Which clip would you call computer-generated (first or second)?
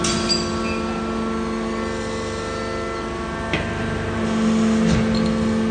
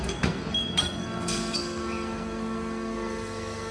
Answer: second